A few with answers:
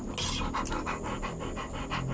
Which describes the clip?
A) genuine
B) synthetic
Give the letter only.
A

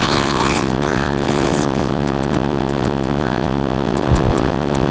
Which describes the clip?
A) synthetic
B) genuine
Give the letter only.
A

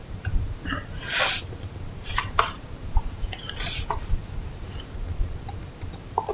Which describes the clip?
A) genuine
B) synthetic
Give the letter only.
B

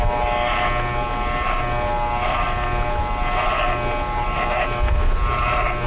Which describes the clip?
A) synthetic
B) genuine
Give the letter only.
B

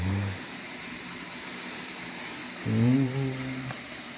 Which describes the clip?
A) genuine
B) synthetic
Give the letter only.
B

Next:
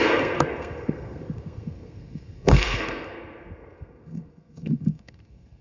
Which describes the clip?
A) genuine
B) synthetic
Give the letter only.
B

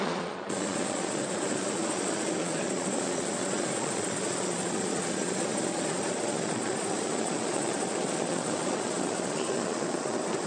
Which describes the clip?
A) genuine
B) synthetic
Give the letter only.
B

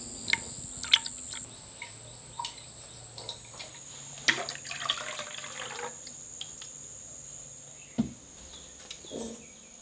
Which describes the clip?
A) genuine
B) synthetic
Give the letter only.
A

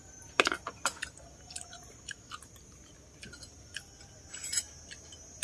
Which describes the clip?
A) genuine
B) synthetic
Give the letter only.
A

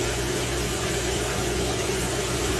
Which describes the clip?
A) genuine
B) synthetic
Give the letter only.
B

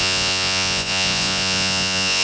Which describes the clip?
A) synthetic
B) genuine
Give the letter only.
A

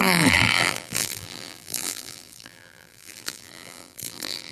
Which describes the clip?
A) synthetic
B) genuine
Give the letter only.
A